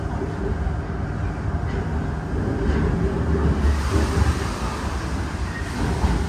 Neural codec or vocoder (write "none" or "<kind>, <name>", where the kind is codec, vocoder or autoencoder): none